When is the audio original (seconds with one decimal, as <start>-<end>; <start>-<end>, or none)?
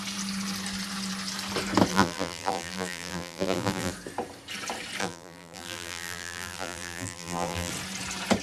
0.0-1.9; 3.9-5.0; 7.7-8.4